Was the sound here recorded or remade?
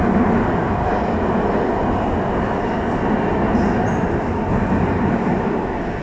recorded